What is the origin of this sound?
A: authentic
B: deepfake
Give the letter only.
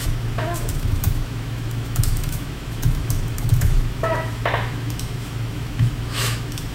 B